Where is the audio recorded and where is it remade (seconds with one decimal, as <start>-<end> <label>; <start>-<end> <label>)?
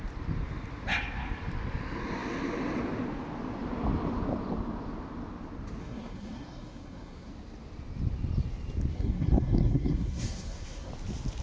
0.0-5.8 recorded; 5.8-7.3 remade; 7.3-8.9 recorded; 8.9-10.9 remade; 10.9-11.4 recorded